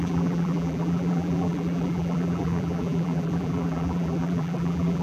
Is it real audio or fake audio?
fake